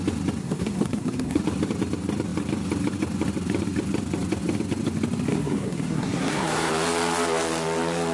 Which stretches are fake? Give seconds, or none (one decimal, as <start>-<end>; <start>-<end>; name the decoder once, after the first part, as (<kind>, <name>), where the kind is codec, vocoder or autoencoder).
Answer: 0.4-1.4 (codec, SNAC); 5.3-6.7